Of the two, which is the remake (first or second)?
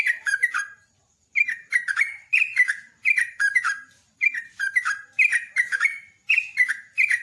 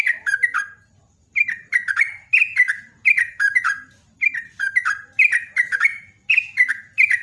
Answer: first